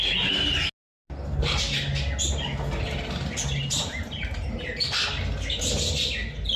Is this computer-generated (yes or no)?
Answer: no